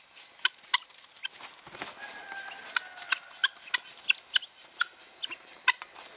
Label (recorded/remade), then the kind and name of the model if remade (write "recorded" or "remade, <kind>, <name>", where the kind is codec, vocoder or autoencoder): recorded